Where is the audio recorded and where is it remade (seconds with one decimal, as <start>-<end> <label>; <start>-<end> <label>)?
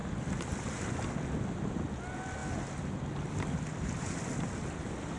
0.0-5.2 recorded